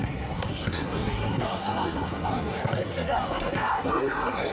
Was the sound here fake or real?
fake